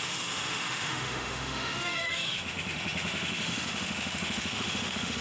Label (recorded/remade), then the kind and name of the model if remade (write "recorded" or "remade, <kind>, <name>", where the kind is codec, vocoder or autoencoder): remade, autoencoder, DAC-VAE